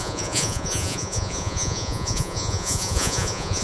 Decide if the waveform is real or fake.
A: fake